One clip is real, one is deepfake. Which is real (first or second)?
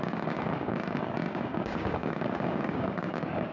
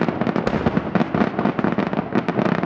second